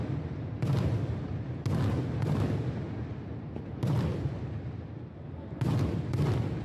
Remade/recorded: recorded